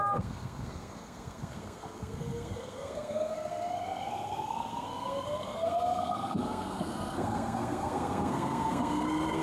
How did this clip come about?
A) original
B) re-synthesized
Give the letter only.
B